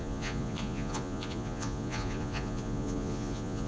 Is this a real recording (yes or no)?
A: no